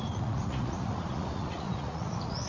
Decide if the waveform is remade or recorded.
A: remade